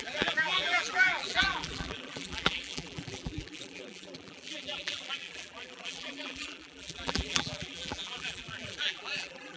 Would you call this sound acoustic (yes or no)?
no